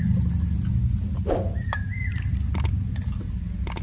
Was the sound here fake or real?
real